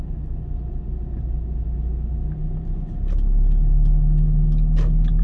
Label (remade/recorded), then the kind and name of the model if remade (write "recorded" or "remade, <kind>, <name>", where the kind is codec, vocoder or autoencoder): recorded